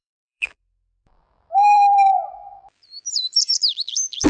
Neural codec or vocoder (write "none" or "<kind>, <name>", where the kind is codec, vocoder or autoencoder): vocoder, BigVGAN v2